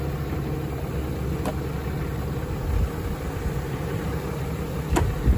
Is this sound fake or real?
real